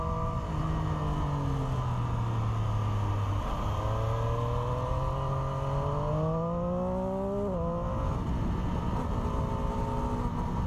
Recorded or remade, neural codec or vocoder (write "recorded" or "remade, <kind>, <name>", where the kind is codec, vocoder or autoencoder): recorded